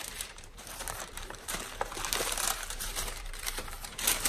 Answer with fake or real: fake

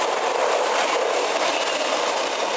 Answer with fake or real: fake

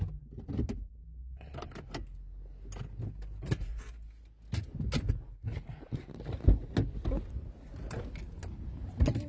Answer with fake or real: real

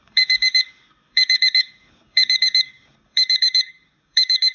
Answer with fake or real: fake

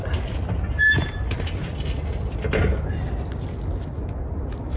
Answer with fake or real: real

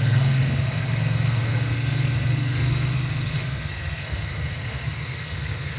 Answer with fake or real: fake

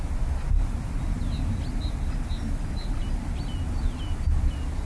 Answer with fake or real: real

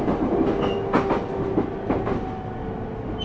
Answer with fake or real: real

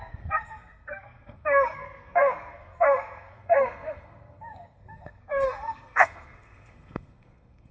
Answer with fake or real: fake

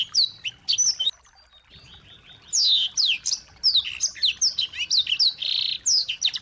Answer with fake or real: real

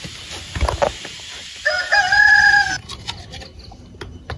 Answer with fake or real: real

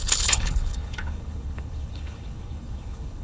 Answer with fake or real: fake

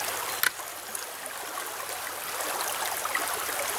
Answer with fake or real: real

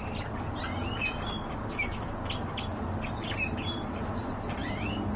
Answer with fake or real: real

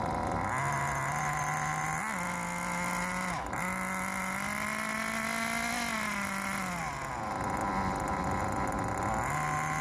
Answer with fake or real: real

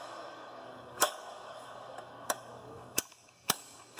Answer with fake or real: fake